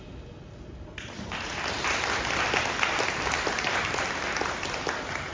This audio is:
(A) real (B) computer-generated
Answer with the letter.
A